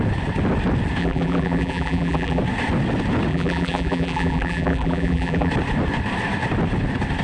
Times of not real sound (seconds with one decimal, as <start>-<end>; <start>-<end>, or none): 1.0-2.4; 3.3-5.5